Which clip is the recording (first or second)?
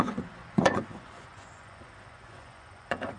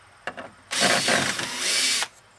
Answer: second